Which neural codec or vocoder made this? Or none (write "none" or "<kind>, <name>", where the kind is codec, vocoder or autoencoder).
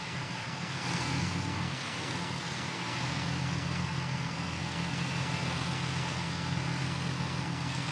codec, SNAC